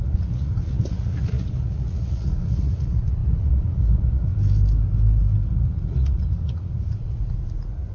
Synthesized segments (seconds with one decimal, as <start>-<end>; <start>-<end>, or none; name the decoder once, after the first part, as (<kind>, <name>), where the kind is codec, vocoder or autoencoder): 0.0-4.3 (vocoder, Vocos); 5.5-7.9